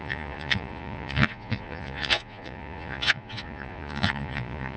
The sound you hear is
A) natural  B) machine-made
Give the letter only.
B